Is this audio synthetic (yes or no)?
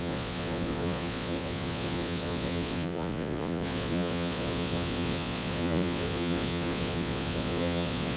yes